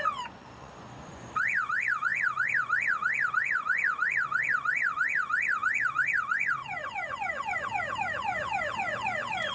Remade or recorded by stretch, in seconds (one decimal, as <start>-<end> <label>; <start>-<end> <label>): 0.0-9.5 remade